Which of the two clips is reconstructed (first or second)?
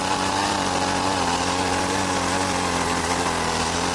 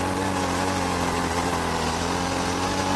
first